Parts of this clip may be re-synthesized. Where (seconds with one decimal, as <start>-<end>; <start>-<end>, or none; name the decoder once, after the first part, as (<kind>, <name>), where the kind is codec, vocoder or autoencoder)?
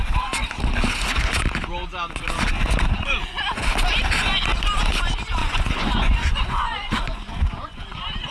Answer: 5.4-7.8 (vocoder, Vocos)